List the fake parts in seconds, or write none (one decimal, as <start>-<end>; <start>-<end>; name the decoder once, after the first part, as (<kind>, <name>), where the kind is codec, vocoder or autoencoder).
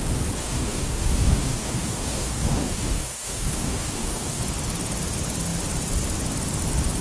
0.4-4.4 (codec, DAC)